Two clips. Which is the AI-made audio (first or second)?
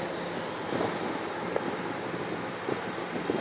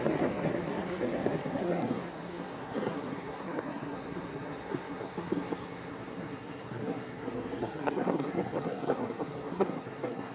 second